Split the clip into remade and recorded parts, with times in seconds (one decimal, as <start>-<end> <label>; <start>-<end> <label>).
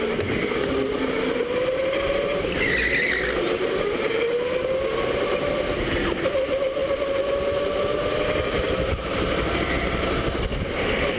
0.0-11.2 recorded